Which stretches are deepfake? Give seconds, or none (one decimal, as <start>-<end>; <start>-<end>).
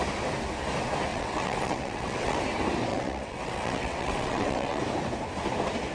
1.1-2.4; 2.9-4.8